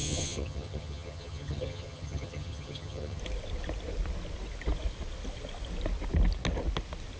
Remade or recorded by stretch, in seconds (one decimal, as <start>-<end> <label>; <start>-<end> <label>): 0.0-3.2 remade; 3.2-7.2 recorded